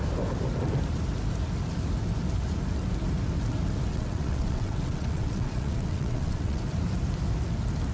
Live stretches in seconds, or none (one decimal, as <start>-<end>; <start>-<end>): 0.0-3.9; 6.6-7.9